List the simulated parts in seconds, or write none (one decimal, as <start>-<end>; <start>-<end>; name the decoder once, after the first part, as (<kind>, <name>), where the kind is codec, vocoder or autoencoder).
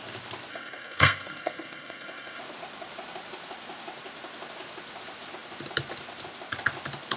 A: 0.5-2.4 (codec, SNAC)